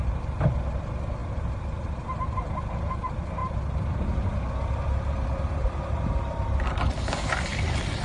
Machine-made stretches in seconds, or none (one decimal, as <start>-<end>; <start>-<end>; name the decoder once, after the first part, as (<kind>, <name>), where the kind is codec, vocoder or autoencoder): none